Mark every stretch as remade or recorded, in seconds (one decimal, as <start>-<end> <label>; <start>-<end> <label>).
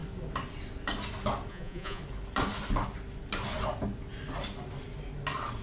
0.0-1.5 recorded; 1.5-2.0 remade; 2.0-5.6 recorded